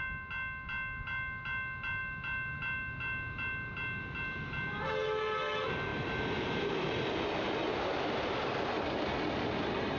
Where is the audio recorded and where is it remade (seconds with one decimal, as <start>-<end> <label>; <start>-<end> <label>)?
0.0-10.0 recorded